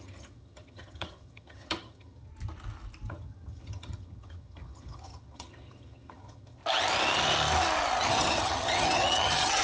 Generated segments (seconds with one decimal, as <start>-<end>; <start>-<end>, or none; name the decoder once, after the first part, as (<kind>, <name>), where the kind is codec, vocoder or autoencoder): 0.0-2.3 (vocoder, HiFi-GAN); 3.1-6.6; 8.1-9.6